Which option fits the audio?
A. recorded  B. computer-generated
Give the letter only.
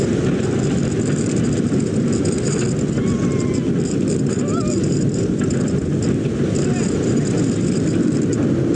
A